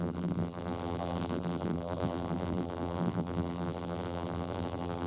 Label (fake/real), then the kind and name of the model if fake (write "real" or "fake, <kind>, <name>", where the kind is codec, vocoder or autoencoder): fake, vocoder, BigVGAN v2